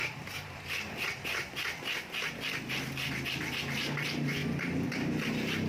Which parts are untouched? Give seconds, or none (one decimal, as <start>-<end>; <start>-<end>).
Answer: 1.6-3.6; 4.4-5.7